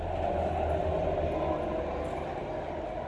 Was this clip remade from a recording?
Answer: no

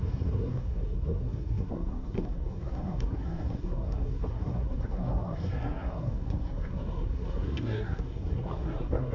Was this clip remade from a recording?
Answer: yes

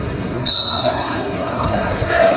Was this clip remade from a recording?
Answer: yes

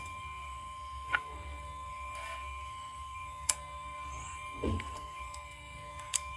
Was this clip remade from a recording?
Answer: yes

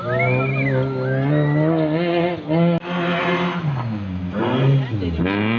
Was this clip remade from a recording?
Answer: no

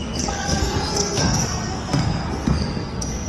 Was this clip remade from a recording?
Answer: yes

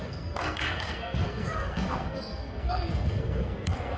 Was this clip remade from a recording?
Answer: yes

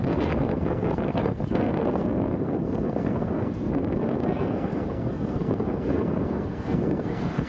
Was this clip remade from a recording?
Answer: yes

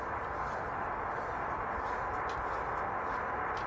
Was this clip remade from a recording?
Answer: no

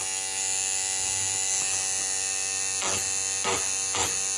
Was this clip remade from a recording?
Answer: no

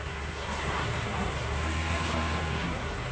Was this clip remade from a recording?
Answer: yes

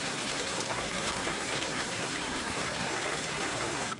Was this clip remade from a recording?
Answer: yes